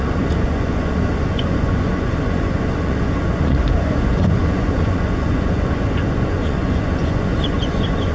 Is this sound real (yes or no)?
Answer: no